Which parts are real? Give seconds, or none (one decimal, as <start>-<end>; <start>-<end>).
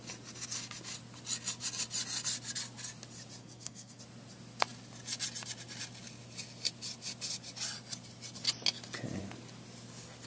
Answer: 0.0-3.4; 4.0-10.3